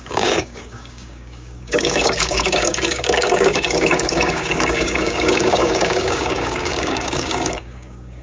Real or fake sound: fake